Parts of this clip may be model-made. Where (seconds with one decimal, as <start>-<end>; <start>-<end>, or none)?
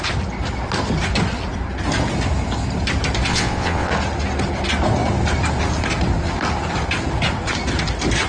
3.3-3.9